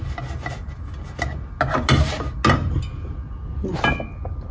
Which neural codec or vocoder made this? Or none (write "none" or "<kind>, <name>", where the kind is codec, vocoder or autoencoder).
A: none